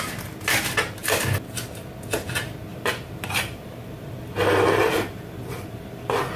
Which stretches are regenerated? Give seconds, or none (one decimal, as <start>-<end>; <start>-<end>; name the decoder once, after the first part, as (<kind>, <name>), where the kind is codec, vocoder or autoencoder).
2.7-6.4 (vocoder, BigVGAN v2)